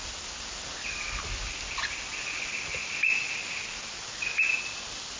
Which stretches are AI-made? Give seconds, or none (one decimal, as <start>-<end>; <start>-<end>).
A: none